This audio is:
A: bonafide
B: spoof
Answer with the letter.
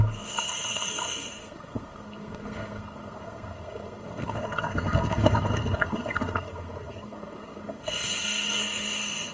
B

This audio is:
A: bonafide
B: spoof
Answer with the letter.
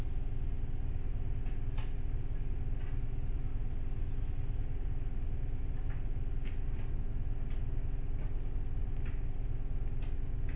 A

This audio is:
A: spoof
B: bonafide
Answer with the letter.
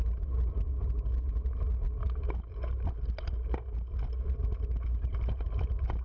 B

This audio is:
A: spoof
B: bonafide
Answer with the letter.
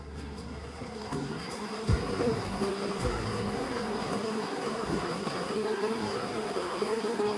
A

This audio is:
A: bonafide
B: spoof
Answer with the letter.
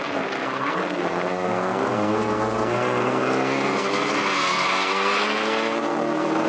B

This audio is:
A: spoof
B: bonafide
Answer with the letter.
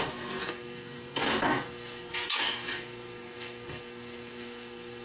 A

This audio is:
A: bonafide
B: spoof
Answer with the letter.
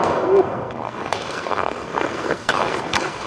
B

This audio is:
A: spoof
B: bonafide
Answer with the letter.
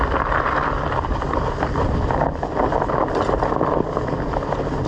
B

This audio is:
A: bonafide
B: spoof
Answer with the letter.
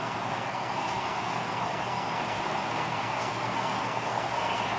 B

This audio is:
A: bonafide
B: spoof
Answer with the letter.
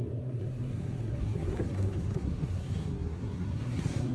B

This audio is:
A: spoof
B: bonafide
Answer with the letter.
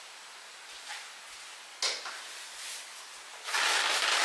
B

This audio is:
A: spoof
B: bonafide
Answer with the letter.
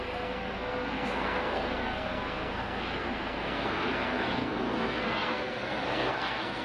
A